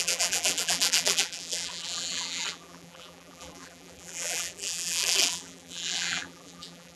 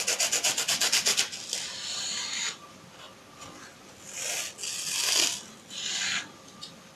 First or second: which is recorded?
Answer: second